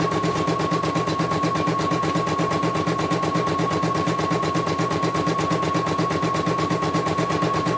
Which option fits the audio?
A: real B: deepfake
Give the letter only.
A